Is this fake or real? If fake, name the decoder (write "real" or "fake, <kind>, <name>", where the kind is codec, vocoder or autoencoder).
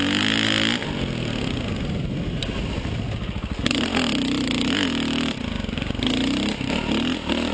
real